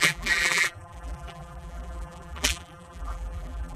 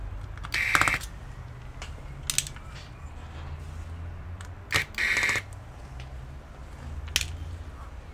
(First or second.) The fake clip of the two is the first